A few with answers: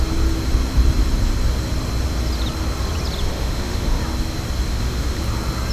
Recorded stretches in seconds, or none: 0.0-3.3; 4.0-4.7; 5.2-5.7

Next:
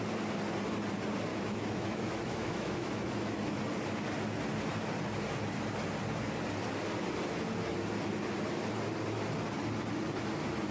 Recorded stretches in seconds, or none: 0.0-1.3; 3.6-10.7

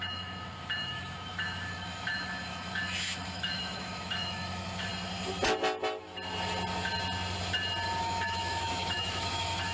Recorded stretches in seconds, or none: 4.9-8.0

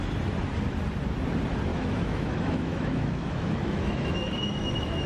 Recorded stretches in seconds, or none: 0.0-1.7

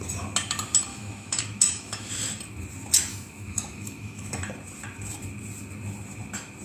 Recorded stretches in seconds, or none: 0.0-0.9; 2.1-3.1; 4.3-6.6

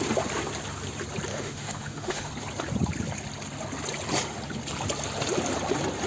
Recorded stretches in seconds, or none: 0.0-1.3; 2.3-6.1